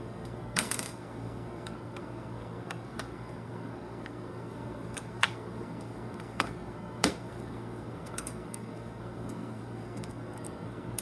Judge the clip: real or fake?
fake